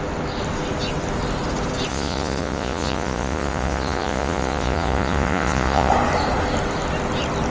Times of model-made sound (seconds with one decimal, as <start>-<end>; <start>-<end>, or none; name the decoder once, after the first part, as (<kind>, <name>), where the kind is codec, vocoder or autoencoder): 1.9-5.9 (vocoder, Vocos)